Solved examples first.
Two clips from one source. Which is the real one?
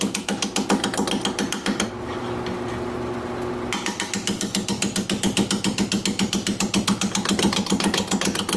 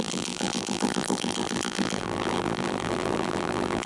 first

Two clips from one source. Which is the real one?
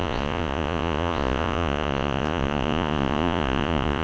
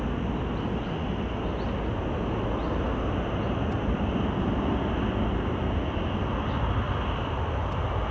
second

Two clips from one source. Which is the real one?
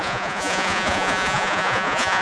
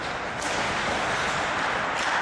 second